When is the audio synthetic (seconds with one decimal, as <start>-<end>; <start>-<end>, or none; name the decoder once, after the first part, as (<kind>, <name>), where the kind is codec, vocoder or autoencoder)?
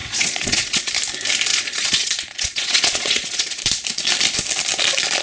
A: 0.0-0.9 (vocoder, Vocos); 1.5-3.6